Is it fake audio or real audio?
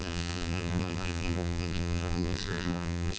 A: fake